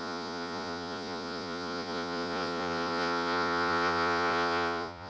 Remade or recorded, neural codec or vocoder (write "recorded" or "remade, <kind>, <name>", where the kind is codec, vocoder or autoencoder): remade, vocoder, Vocos